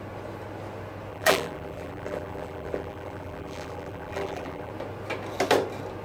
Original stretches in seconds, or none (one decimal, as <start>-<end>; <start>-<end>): 0.0-1.1; 4.7-6.0